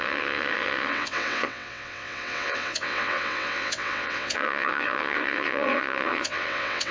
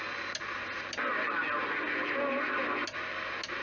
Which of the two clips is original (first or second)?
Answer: second